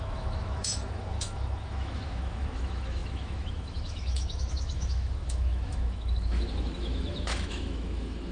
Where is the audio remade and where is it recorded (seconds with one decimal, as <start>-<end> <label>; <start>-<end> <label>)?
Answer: 0.0-8.3 remade